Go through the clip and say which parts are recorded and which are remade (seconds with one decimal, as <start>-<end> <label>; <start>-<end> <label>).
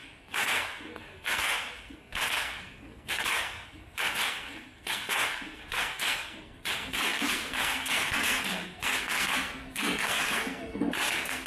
0.0-11.5 remade